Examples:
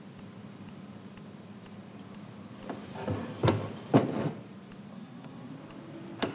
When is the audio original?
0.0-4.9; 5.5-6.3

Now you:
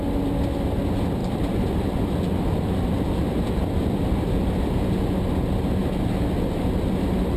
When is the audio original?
0.0-1.2; 4.7-7.4

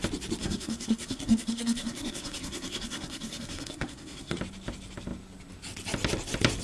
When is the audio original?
0.0-0.4; 4.4-6.6